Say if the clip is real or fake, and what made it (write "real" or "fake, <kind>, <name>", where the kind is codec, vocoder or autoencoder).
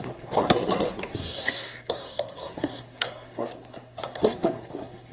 fake, codec, SNAC